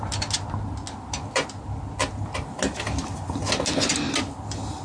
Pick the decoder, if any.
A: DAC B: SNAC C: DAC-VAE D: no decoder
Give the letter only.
D